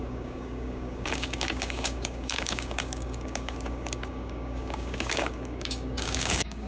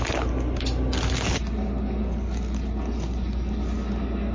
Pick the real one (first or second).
second